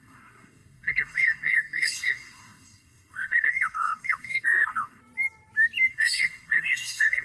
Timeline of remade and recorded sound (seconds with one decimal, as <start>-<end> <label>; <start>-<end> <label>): 0.0-5.0 remade; 5.0-5.9 recorded; 5.9-7.2 remade